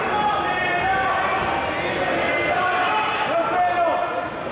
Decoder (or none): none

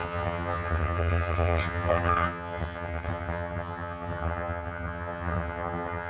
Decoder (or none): vocoder, HiFi-GAN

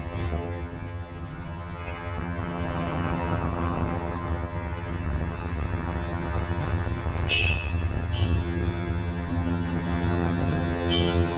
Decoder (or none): vocoder, HiFi-GAN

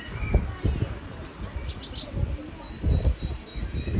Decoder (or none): none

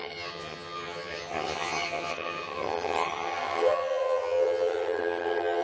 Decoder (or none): vocoder, HiFi-GAN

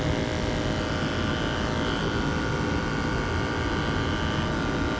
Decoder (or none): none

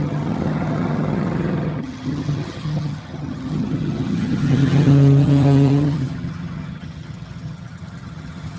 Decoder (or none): vocoder, HiFi-GAN